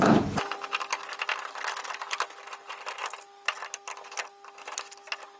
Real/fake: real